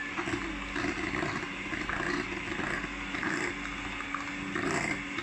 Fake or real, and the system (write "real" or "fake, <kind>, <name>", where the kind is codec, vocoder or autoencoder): real